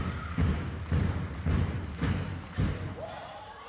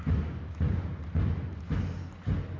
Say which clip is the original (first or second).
second